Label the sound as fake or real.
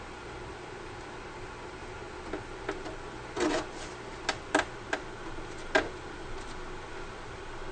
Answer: real